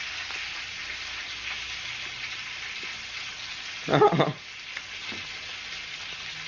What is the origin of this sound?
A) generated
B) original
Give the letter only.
B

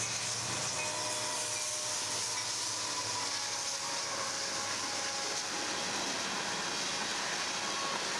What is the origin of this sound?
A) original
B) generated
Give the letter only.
A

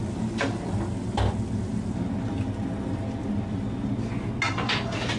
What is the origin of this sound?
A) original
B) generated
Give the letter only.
A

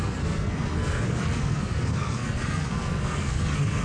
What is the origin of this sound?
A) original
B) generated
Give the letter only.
B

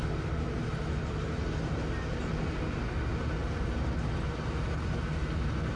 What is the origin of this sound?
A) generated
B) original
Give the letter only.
B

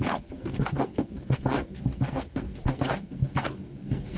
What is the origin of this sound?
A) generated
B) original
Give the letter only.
A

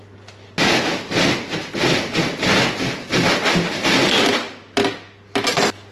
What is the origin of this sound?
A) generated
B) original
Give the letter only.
B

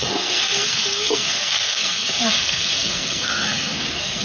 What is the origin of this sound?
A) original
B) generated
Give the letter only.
B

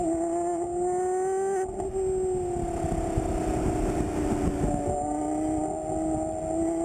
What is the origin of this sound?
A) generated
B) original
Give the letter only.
B